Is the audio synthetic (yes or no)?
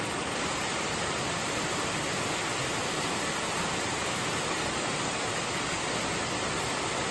no